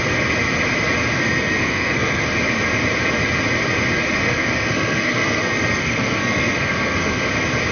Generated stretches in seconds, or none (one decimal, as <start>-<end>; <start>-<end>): 1.2-2.2; 4.2-7.3